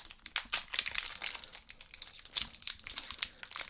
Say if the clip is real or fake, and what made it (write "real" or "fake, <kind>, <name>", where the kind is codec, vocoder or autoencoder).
real